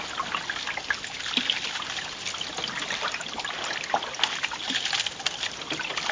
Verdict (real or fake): real